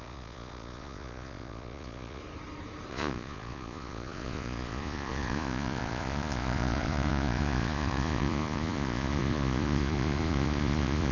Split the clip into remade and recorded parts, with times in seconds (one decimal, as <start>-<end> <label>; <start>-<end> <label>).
0.0-2.2 remade; 2.2-2.9 recorded; 2.9-11.1 remade